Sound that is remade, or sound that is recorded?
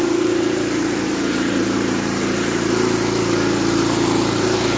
remade